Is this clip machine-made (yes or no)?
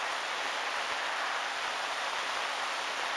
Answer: no